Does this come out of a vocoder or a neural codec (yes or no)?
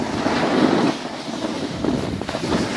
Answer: no